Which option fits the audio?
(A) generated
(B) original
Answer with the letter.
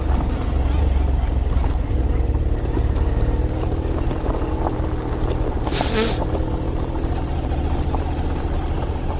B